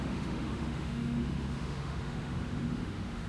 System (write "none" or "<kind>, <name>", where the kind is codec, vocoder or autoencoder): autoencoder, DAC-VAE